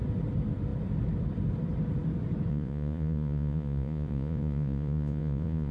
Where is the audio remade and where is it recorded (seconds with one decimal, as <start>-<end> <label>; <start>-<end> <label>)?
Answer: 0.0-2.5 recorded; 2.5-5.7 remade